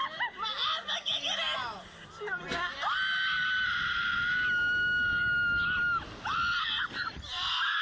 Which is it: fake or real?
real